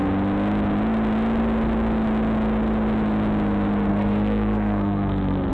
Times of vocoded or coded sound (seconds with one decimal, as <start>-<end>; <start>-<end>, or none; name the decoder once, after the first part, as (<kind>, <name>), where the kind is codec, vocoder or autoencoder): 3.9-5.5 (codec, SNAC)